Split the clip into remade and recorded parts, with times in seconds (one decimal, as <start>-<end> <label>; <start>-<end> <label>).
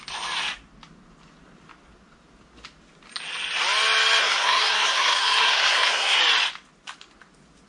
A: 0.0-4.2 recorded; 4.2-6.2 remade; 6.2-7.7 recorded